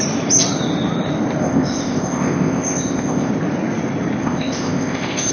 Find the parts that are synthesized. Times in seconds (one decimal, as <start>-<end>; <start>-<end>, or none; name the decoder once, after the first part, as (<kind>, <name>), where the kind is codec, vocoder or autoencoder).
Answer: 1.4-3.3 (codec, ZipCodec); 4.2-5.3